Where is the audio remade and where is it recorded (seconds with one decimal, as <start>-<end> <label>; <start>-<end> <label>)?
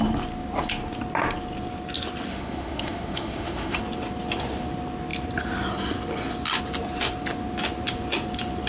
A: 0.0-2.3 recorded; 2.3-3.8 remade; 3.8-8.7 recorded